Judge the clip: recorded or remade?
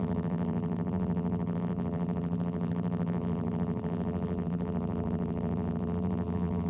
remade